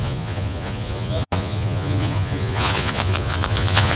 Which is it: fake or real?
fake